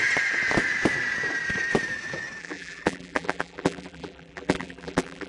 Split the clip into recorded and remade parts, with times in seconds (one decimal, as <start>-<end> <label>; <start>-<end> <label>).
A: 0.0-2.4 recorded; 2.4-5.3 remade